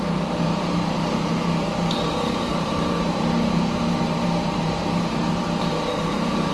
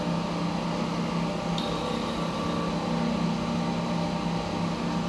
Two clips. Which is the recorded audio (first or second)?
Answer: second